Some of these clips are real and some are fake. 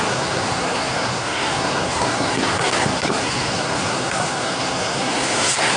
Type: fake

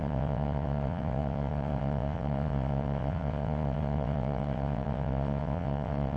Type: fake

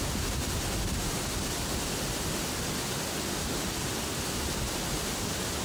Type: real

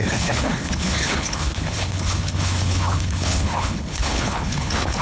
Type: fake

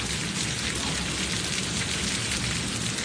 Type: real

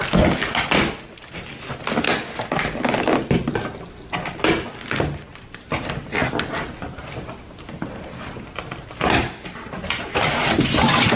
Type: real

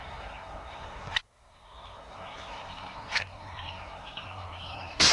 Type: fake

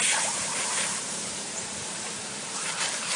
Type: fake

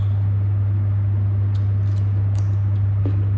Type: real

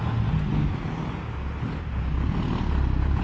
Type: real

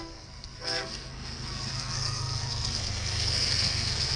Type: fake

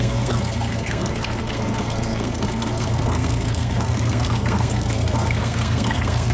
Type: fake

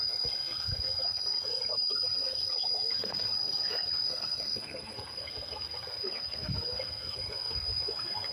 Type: fake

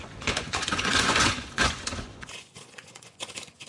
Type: fake